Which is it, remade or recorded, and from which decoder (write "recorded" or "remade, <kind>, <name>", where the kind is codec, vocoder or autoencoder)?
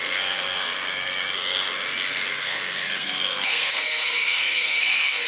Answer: remade, codec, SNAC